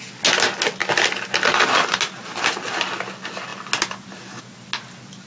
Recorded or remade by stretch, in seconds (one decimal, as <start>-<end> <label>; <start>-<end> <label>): 0.0-5.3 recorded